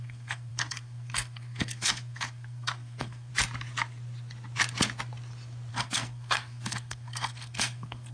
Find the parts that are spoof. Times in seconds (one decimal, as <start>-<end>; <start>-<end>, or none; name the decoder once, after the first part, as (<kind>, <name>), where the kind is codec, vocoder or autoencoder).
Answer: 0.0-3.3 (codec, SNAC); 5.7-8.1